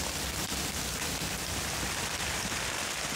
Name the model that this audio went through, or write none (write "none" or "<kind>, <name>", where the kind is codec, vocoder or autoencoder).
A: none